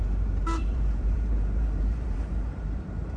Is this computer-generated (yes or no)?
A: yes